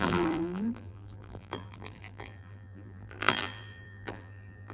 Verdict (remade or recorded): remade